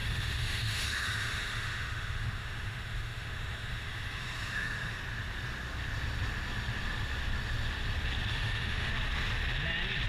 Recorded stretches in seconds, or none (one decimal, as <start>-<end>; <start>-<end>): 5.0-8.3; 8.9-10.1